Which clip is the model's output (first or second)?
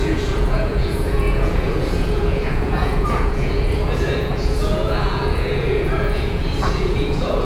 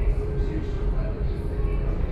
first